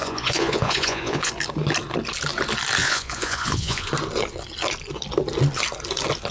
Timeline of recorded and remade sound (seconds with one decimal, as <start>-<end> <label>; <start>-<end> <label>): 0.0-1.3 remade; 1.3-2.8 recorded; 2.8-3.9 remade; 3.9-6.3 recorded